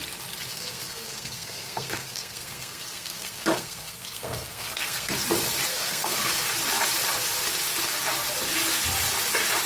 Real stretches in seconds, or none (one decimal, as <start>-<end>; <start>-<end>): 0.0-0.5; 5.1-5.7; 6.4-9.7